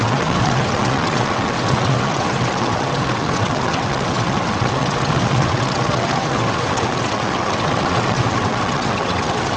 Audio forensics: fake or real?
fake